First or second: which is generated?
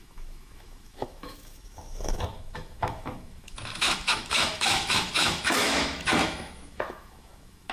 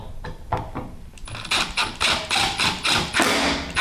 first